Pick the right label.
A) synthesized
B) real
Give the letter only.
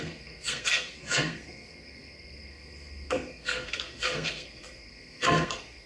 A